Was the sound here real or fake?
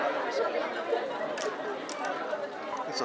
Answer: real